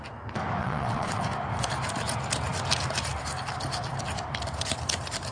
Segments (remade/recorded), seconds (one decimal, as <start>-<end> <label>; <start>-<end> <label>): 0.0-0.6 recorded; 0.6-1.2 remade; 1.2-5.3 recorded